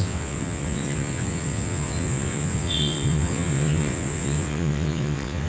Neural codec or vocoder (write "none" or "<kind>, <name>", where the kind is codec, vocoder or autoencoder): vocoder, WaveNeXt